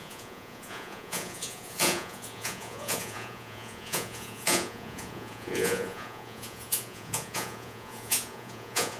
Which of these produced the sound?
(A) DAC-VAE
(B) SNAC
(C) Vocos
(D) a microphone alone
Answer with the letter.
C